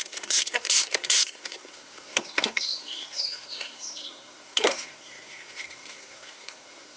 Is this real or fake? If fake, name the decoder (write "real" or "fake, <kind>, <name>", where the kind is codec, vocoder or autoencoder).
fake, codec, SNAC